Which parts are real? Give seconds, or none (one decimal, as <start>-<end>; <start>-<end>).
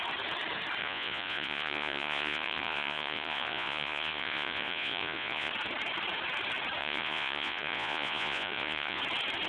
0.0-0.8; 5.5-6.8; 9.0-9.5